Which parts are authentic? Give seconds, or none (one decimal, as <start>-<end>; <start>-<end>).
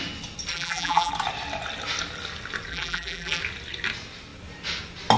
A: 0.0-0.5; 1.1-2.7; 3.4-5.2